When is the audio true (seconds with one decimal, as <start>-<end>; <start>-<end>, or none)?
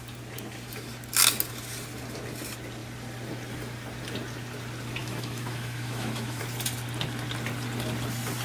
0.0-5.0; 6.4-8.4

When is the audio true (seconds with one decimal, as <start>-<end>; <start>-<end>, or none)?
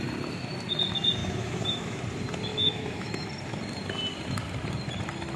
0.0-1.2; 2.0-2.5; 3.3-5.4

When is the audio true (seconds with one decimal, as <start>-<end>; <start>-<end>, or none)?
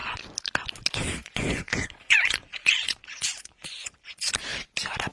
0.0-1.2; 4.3-5.1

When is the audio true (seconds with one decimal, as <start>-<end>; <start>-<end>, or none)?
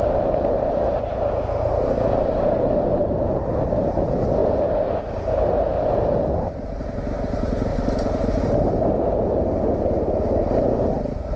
0.0-11.4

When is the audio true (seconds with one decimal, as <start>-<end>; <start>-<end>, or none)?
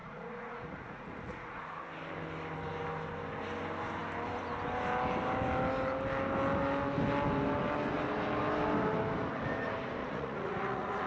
1.6-10.0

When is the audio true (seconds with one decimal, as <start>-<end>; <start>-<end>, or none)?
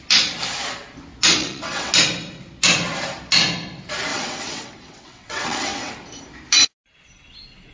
0.0-1.4; 1.9-4.1; 5.9-7.7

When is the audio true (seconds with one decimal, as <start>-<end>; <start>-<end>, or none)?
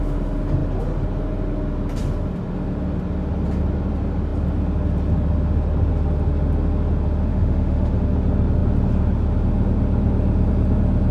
0.0-7.3; 7.9-11.1